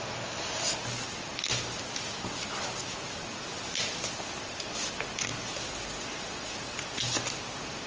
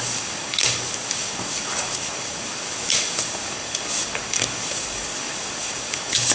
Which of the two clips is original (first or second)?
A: first